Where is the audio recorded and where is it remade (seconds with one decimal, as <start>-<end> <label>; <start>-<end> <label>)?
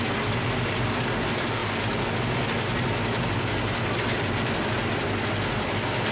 0.0-6.1 recorded